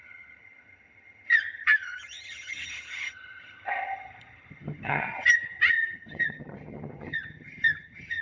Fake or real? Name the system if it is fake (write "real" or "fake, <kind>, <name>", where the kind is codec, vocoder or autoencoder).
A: fake, vocoder, HiFi-GAN